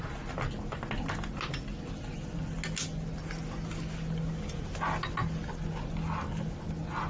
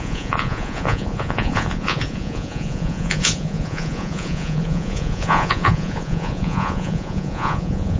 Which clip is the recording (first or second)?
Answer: first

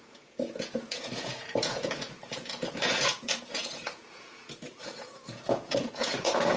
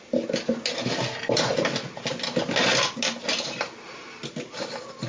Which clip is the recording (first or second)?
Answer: second